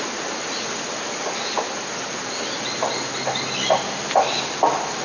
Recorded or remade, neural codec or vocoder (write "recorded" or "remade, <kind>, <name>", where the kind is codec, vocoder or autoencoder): recorded